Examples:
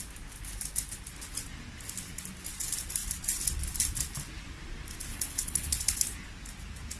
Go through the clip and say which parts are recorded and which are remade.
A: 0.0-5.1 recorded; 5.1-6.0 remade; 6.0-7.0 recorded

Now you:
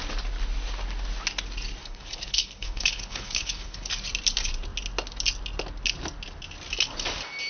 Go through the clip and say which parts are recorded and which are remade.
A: 0.0-1.8 recorded; 1.8-3.9 remade; 3.9-7.5 recorded